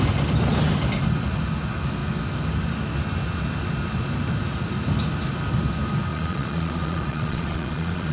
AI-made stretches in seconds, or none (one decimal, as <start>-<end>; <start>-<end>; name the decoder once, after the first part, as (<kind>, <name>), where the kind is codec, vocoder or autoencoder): 6.1-8.1 (vocoder, Vocos)